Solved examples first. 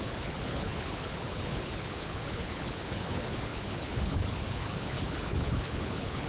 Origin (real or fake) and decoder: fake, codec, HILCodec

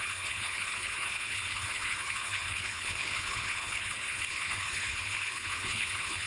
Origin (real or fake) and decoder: fake, codec, HILCodec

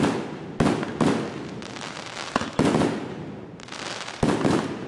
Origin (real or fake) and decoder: real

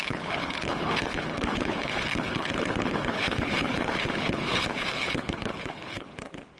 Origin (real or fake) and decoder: fake, codec, HILCodec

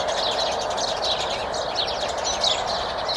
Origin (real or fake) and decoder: real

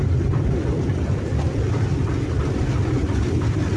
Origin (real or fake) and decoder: real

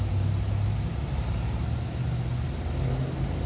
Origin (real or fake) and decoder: real